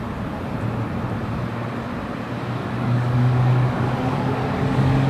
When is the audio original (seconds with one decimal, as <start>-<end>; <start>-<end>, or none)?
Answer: 0.0-2.6

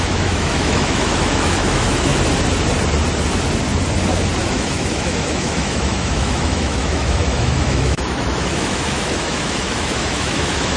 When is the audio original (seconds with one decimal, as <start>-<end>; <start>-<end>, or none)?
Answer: 2.1-4.5

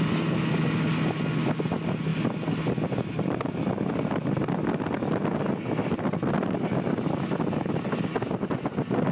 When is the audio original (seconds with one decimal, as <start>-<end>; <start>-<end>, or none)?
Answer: 0.0-9.1